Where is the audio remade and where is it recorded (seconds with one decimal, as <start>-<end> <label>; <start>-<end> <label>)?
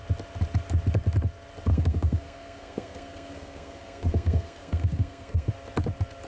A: 0.0-1.7 recorded; 1.7-5.5 remade; 5.5-6.3 recorded